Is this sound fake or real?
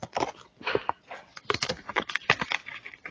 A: real